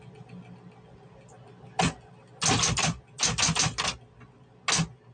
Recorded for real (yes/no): yes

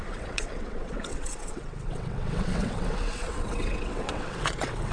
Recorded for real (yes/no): no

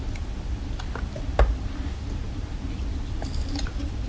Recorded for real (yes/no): yes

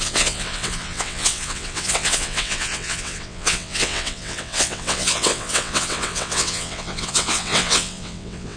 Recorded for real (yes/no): no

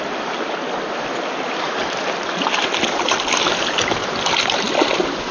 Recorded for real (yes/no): yes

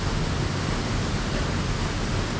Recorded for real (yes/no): yes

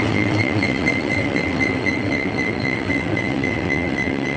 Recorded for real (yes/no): no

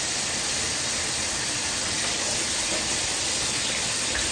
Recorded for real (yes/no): yes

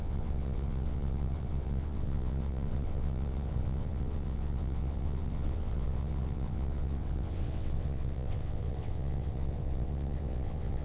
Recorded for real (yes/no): no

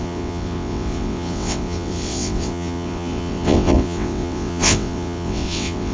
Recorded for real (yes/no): no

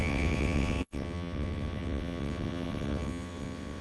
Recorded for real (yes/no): no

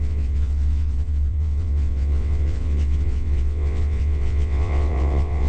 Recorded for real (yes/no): no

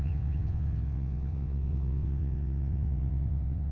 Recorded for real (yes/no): no